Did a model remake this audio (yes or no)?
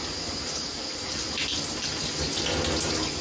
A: no